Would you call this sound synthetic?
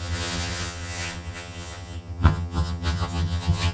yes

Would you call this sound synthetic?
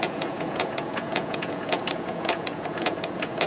yes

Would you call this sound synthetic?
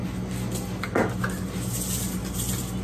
no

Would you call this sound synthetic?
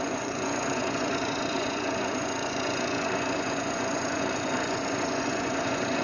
yes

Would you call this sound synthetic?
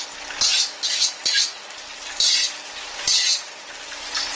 no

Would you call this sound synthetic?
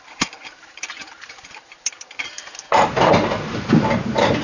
yes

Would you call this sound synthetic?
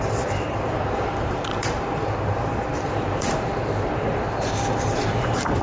yes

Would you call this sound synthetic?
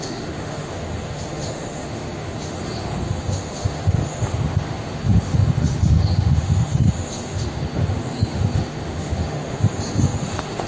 yes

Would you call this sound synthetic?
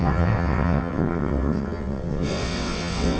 yes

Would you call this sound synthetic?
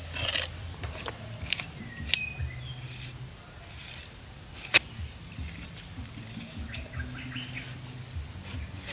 no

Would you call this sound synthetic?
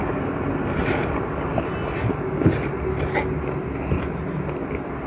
no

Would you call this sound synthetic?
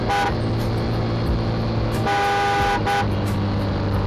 no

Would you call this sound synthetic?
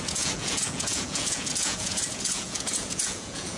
yes